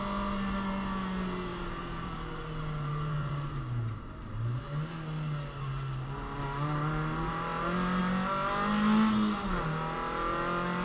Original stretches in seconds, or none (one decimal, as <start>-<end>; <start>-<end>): 0.0-1.5; 4.6-10.8